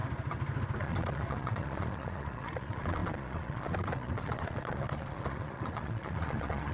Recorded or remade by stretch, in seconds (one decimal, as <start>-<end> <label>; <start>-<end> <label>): 0.0-0.8 recorded; 0.8-6.7 remade